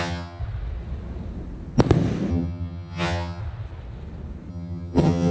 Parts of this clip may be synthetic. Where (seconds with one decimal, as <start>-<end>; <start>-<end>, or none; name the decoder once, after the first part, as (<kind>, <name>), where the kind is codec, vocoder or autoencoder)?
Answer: 0.0-0.4 (vocoder, HiFi-GAN); 2.3-3.4; 4.5-5.3